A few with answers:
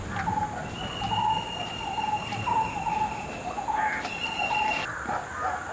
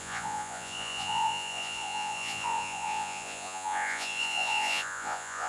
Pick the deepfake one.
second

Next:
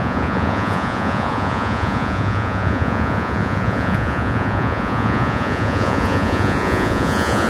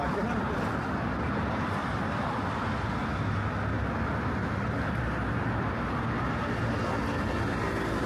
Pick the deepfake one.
first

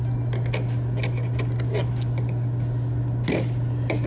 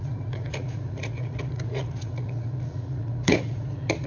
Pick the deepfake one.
second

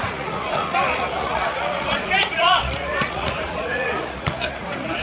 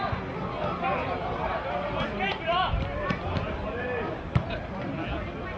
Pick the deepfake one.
first